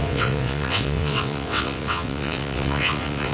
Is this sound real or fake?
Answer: fake